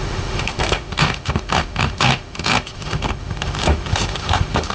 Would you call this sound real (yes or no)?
no